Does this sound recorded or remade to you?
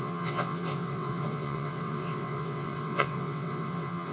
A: remade